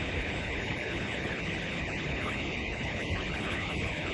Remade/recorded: remade